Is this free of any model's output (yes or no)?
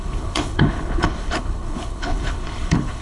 no